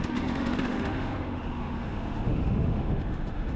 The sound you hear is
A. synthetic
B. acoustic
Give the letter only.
A